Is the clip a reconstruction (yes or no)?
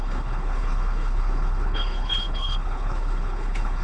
yes